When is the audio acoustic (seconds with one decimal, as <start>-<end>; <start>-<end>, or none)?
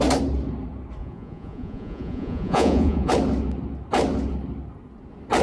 0.0-1.0; 3.1-5.4